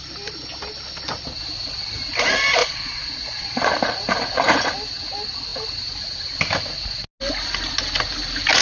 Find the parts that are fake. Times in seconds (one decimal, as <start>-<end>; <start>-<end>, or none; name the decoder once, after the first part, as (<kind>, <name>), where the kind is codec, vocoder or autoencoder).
2.6-3.7 (vocoder, Vocos)